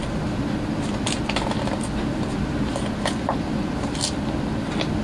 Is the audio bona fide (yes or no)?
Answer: yes